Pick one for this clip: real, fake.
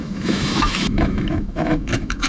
fake